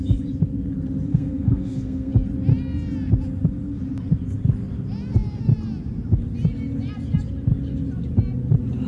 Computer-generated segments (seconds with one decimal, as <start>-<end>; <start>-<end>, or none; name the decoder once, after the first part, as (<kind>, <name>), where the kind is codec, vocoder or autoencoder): 1.1-2.1 (codec, SNAC)